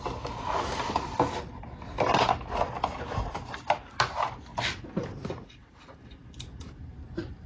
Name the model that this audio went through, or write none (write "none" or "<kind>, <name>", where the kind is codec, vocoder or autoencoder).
none